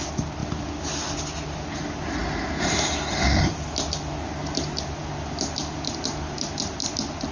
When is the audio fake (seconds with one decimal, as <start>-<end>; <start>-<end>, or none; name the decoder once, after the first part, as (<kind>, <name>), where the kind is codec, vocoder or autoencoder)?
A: none